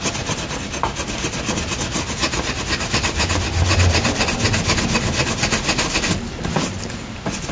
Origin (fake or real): real